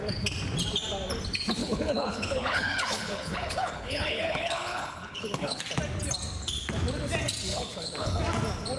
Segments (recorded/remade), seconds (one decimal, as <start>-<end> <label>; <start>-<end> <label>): 0.0-1.6 recorded; 1.6-5.6 remade; 5.6-7.5 recorded; 7.5-8.2 remade; 8.2-8.8 recorded